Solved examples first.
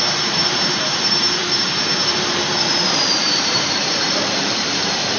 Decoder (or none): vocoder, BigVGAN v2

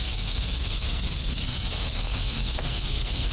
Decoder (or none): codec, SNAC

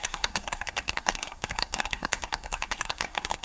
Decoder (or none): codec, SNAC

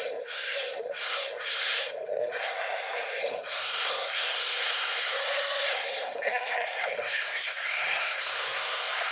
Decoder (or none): codec, SNAC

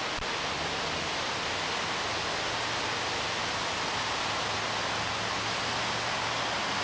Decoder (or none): none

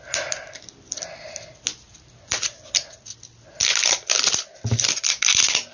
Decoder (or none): none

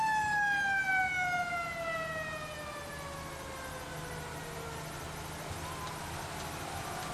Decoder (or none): none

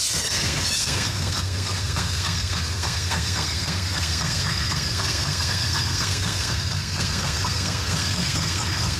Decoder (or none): codec, SNAC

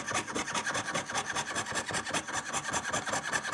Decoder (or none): none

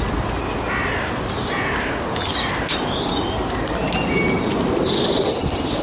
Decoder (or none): none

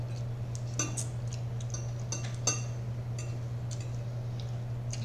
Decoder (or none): none